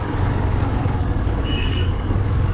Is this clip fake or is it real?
fake